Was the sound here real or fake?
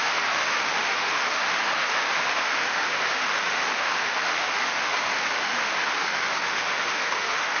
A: fake